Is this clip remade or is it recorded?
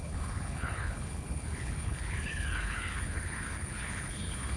remade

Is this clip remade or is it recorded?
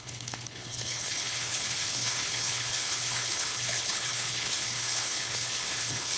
remade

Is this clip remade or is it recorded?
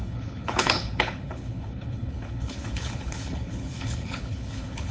remade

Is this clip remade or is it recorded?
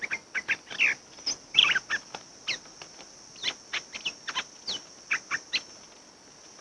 recorded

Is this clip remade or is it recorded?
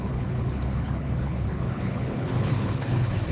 remade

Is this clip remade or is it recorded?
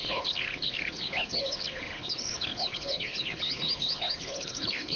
remade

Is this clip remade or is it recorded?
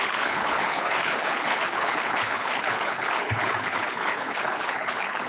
remade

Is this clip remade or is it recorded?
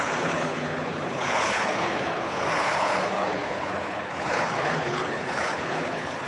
remade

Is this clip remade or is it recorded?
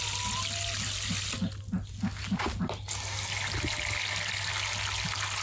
recorded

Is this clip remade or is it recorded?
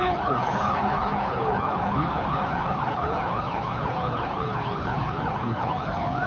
remade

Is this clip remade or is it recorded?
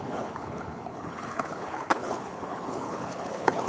remade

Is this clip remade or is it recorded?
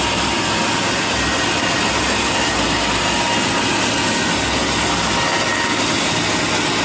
recorded